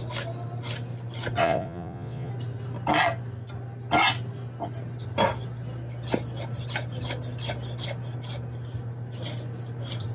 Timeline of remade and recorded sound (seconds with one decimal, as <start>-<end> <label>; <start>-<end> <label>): 0.0-1.4 recorded; 1.4-2.3 remade; 2.3-10.1 recorded